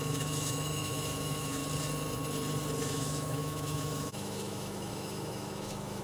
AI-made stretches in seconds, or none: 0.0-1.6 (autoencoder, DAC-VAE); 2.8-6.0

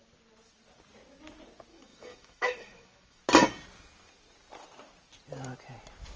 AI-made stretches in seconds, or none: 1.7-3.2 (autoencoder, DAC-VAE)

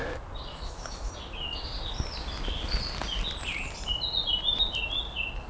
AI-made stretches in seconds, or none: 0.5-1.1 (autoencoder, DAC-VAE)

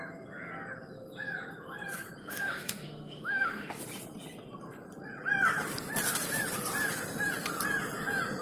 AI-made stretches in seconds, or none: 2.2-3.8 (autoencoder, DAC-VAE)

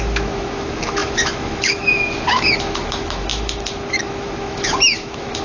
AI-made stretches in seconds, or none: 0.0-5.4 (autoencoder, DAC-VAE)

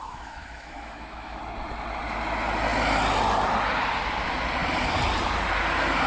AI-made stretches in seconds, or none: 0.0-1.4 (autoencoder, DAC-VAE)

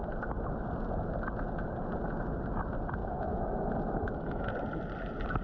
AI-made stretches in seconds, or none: 3.0-4.5 (autoencoder, DAC-VAE)

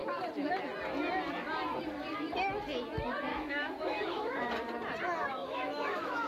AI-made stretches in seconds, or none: 3.3-4.5 (autoencoder, DAC-VAE); 5.3-6.3